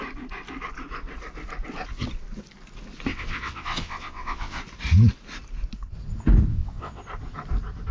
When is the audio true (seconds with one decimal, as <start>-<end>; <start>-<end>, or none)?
0.0-3.1; 4.6-6.5; 7.0-7.9